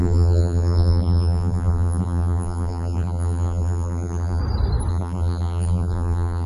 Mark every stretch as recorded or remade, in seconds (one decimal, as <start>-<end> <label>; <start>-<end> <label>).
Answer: 0.0-4.4 remade; 4.4-4.9 recorded; 4.9-6.5 remade